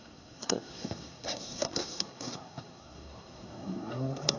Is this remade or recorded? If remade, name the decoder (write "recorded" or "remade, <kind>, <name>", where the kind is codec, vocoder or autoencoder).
remade, codec, SNAC